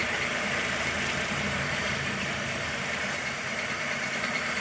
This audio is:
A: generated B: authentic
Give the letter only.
A